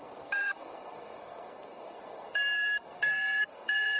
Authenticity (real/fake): fake